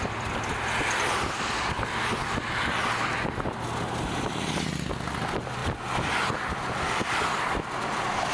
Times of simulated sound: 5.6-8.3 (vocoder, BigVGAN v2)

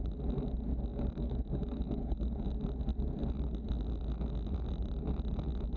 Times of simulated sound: 0.9-2.5 (codec, DAC)

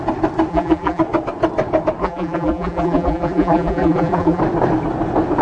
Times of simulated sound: 0.5-1.0 (vocoder, BigVGAN v2); 2.0-4.4

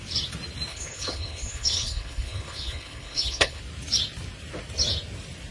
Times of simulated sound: 0.7-3.6 (codec, HILCodec)

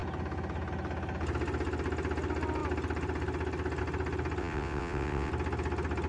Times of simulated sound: 4.4-5.3 (vocoder, WaveNeXt)

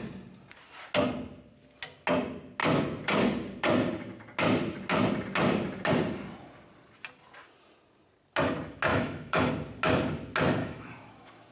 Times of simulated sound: 8.9-9.5 (autoencoder, DAC-VAE); 10.6-11.5

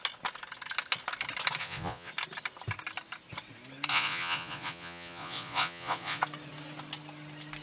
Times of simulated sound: 1.6-2.1 (vocoder, Vocos); 3.9-6.2

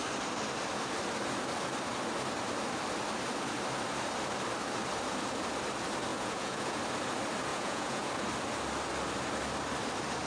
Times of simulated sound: 6.1-6.8 (vocoder, Vocos); 7.5-8.1